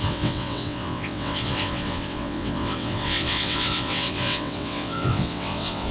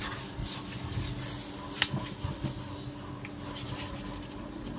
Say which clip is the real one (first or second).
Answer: second